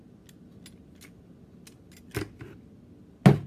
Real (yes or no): yes